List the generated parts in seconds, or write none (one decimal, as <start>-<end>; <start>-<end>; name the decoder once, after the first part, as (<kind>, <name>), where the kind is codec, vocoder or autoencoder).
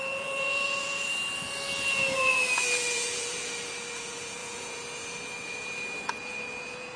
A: 0.0-1.1 (vocoder, Vocos); 1.9-7.0